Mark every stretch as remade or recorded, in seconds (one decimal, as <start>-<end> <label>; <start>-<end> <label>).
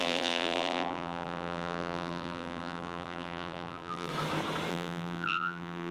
0.0-4.1 remade; 4.1-4.7 recorded; 4.7-5.9 remade